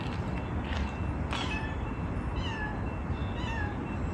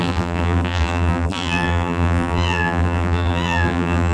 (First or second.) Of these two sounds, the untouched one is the first